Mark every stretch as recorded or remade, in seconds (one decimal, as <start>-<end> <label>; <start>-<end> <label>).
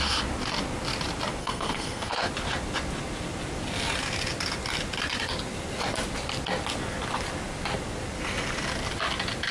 0.0-1.4 recorded; 1.4-2.3 remade; 2.3-9.5 recorded